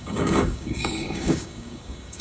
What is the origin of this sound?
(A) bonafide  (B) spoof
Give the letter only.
B